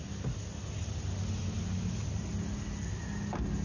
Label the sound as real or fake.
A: real